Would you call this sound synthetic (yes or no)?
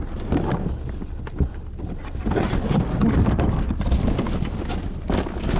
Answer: no